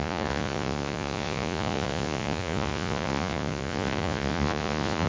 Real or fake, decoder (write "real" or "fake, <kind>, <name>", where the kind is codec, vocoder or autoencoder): fake, vocoder, Vocos